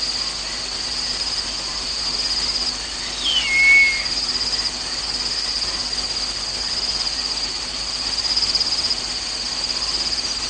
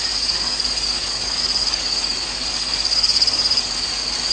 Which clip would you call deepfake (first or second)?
second